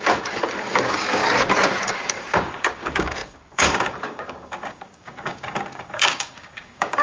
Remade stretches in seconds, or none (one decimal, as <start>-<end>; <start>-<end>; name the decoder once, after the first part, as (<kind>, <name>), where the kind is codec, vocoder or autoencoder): 0.0-1.2 (codec, DAC); 1.8-7.0